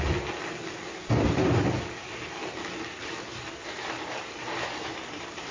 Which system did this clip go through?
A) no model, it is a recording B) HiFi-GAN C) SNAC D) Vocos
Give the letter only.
A